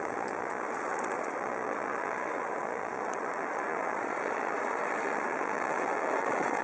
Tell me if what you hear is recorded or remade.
remade